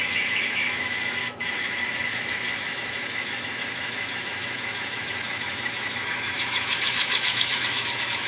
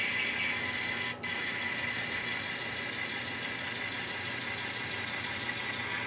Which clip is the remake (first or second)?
first